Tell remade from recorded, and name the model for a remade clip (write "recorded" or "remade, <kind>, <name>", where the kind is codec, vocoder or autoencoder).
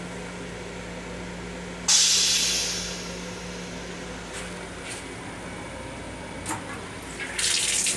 recorded